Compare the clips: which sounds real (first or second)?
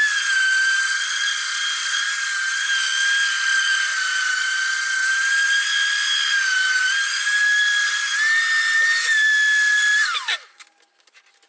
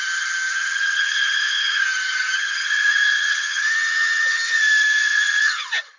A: first